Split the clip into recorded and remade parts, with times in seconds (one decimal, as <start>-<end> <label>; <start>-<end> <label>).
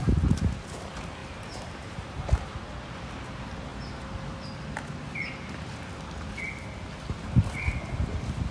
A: 0.0-1.2 recorded; 1.2-2.5 remade; 2.5-8.5 recorded